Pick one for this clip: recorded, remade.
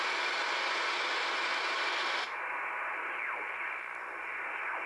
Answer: recorded